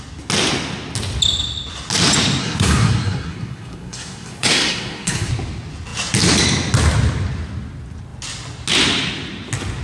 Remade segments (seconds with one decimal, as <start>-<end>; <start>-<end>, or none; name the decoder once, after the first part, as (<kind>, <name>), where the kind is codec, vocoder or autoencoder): 2.4-5.3 (codec, SNAC)